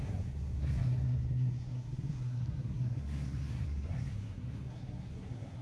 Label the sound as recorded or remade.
remade